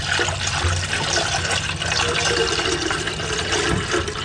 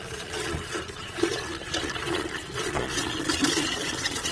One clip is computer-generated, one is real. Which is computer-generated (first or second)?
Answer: second